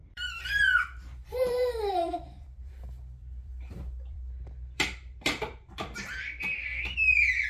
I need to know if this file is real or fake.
fake